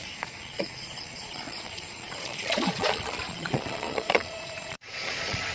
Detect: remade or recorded remade